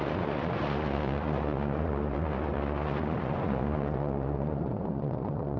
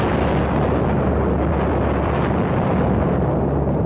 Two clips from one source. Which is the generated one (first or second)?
first